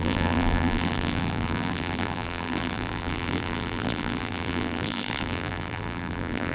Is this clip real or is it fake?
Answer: fake